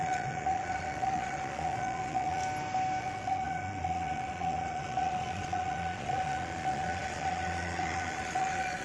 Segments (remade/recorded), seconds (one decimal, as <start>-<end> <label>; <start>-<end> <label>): 0.0-2.4 remade; 2.4-3.0 recorded; 3.0-8.8 remade